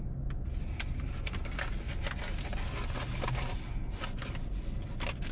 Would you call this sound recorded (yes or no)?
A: yes